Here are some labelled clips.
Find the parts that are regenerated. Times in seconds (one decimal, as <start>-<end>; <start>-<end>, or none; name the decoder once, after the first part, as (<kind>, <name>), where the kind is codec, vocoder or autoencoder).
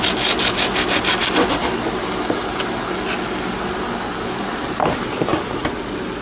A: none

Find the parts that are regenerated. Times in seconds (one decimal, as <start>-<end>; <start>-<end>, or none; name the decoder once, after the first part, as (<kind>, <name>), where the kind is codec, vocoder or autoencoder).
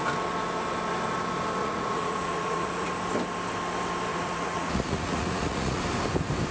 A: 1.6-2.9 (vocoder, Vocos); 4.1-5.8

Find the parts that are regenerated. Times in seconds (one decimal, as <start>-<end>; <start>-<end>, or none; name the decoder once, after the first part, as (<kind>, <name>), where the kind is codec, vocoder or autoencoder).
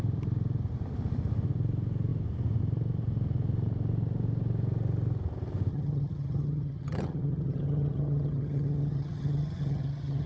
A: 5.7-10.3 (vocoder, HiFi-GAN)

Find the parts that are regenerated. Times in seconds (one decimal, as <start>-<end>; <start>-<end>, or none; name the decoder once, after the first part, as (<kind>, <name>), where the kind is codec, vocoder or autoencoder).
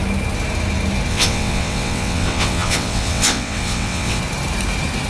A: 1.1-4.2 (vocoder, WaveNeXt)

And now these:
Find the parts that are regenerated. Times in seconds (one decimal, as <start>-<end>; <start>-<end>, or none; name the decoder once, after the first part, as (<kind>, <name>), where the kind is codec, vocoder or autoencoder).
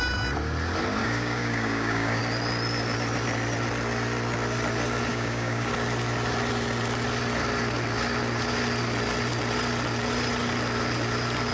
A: 1.0-2.2 (codec, DAC); 5.1-5.7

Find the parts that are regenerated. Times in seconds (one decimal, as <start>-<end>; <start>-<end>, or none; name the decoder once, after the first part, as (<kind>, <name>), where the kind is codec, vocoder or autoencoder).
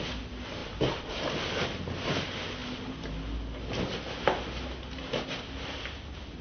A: none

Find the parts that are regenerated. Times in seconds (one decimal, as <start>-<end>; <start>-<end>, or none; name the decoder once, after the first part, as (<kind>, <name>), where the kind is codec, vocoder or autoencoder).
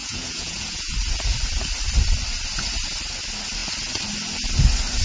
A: 0.0-0.9 (vocoder, Vocos)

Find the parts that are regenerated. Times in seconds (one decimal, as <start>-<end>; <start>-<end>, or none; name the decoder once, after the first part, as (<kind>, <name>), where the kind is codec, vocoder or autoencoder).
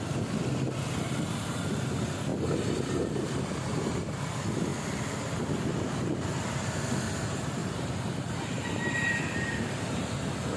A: 2.3-4.2 (vocoder, BigVGAN v2)